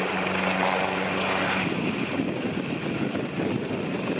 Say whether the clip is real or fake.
real